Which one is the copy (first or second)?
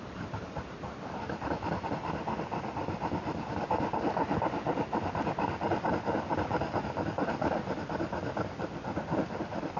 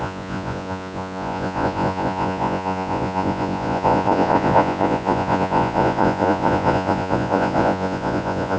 second